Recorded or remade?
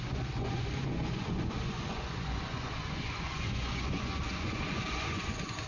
remade